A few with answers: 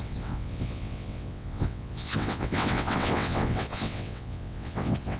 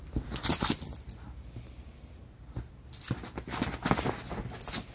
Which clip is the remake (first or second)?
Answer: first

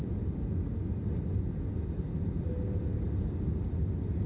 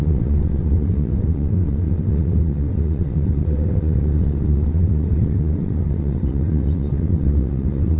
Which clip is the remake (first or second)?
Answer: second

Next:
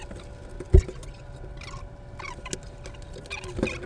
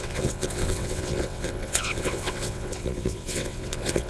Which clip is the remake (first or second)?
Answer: second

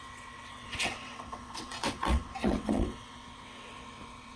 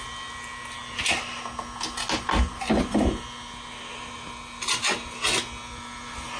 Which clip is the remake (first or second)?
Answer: first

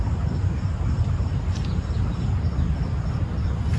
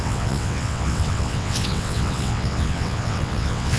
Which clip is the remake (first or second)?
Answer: second